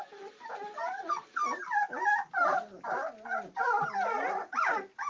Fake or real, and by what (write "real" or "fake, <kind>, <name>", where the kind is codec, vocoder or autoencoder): real